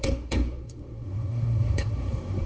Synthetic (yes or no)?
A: yes